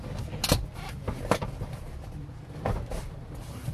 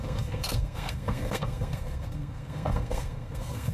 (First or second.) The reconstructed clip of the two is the second